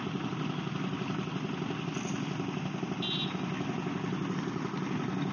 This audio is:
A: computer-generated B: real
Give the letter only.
B